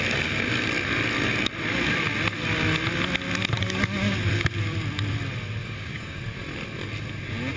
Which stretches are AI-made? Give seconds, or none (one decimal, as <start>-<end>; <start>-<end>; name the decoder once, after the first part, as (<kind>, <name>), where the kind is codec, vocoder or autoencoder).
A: 5.6-6.2 (codec, DAC)